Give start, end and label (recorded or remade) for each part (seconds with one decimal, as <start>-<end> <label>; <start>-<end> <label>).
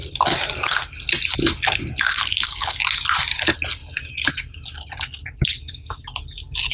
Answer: 0.0-6.7 recorded